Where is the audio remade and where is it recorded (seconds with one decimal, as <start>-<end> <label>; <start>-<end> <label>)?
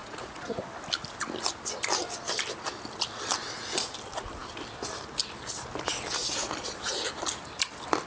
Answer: 0.0-0.6 remade; 0.6-8.1 recorded